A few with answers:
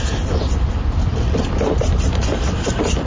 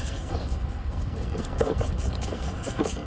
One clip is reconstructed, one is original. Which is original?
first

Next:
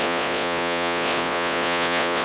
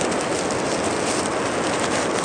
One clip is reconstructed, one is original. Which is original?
second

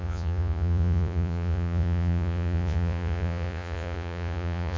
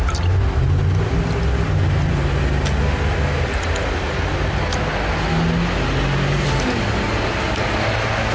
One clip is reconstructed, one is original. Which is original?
second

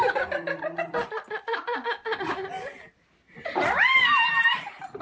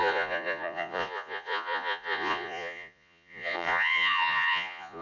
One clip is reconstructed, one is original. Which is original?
first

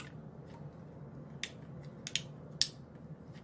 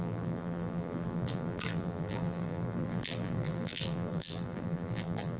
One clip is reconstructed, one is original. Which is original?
first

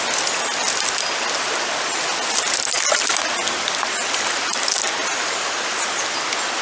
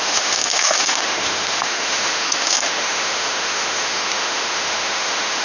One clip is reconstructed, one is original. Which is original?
first